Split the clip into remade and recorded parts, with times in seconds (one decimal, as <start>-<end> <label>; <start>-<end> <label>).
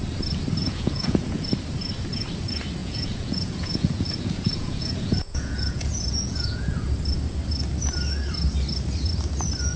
0.0-0.6 recorded; 0.6-1.5 remade; 1.5-2.8 recorded; 2.8-6.9 remade; 6.9-9.8 recorded